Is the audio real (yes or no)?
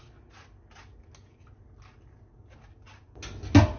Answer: yes